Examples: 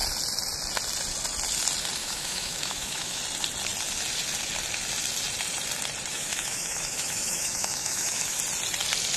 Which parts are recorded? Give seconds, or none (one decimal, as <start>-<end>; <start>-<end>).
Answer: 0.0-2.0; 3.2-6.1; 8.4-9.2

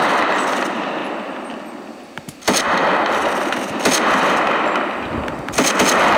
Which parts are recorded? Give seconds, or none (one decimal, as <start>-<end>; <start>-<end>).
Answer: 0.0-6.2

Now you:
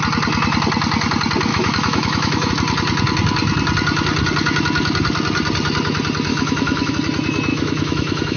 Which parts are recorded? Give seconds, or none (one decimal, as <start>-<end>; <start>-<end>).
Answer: 0.0-1.5; 2.5-6.3; 6.9-7.5

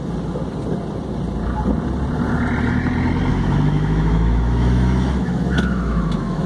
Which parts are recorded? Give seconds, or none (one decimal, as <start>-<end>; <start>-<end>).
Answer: 0.0-3.3

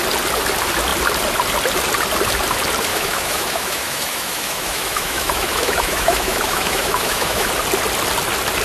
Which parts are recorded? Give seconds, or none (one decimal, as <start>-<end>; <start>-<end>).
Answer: 0.0-2.9; 7.5-8.6

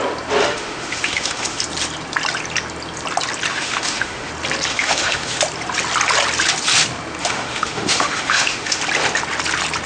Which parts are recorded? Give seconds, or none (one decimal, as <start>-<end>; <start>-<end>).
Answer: 0.0-0.4; 1.6-3.5; 4.3-4.7; 5.4-7.2; 8.8-9.9